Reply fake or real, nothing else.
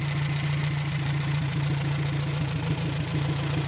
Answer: real